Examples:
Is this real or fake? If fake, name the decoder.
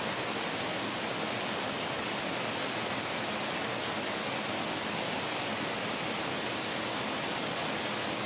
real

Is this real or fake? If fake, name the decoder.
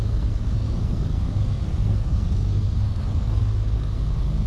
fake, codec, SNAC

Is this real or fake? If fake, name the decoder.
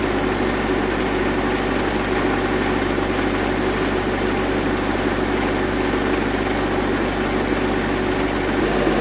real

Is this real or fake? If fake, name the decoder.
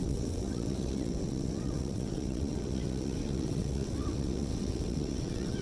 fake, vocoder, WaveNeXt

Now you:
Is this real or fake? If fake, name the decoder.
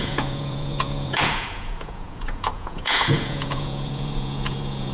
fake, vocoder, Vocos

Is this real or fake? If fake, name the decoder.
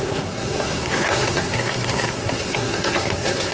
fake, codec, SNAC